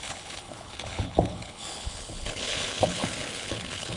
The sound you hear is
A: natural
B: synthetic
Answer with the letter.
B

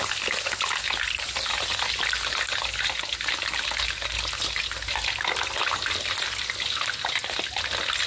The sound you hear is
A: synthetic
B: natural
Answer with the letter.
B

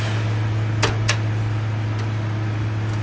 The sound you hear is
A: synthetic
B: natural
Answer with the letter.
B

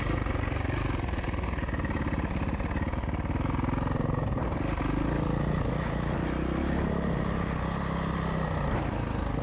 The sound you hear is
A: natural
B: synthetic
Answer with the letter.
A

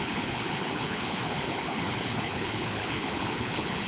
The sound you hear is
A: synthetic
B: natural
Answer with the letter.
A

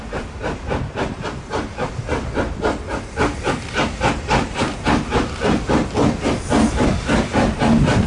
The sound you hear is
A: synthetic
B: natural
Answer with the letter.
B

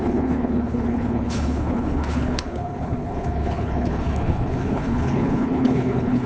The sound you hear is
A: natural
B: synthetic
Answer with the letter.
B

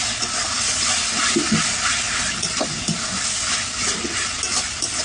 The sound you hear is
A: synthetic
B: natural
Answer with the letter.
B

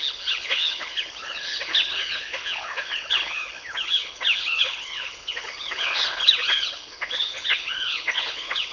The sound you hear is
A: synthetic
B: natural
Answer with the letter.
A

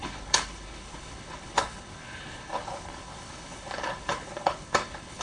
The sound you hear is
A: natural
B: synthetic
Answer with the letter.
B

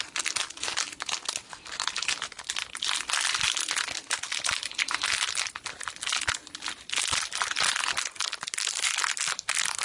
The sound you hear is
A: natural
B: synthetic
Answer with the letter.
A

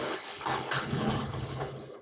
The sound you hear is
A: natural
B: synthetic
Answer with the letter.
B